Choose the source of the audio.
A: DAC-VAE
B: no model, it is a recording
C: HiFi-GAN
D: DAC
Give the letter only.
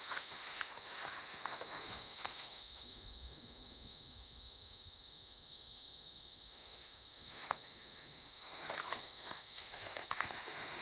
A